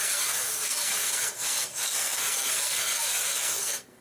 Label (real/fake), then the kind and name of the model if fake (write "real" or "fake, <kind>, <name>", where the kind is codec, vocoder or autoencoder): fake, codec, SNAC